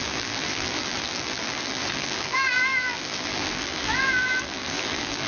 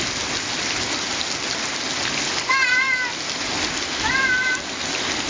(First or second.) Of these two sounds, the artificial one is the first